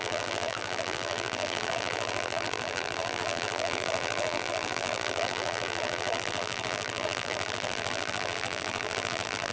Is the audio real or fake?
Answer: fake